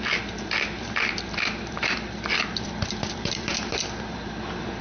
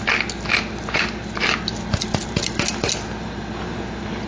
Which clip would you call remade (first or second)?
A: first